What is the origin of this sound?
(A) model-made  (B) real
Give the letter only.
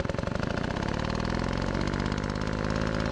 B